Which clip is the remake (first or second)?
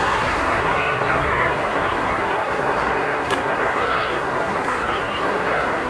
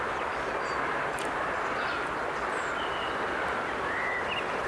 first